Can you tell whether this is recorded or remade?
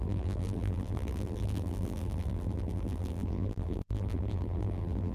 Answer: remade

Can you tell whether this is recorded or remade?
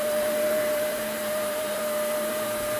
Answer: remade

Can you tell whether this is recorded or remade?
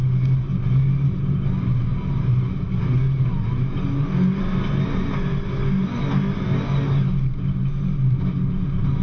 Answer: recorded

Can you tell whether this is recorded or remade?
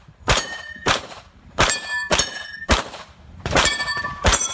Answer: remade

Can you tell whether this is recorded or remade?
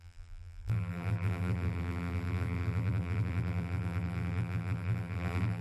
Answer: remade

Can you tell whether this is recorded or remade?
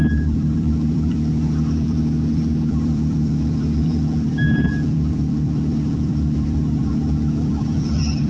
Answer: remade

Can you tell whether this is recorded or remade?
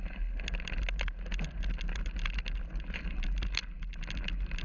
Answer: recorded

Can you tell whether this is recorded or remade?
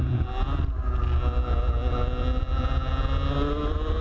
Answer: recorded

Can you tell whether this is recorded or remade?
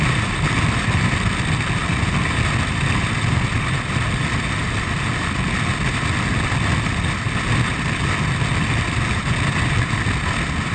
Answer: recorded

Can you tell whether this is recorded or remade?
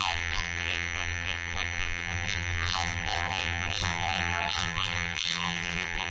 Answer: remade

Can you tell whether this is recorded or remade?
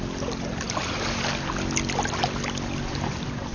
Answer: recorded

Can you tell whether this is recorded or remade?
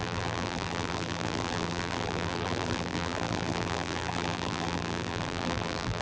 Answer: remade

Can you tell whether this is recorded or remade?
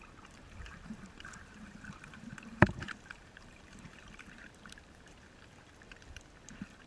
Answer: remade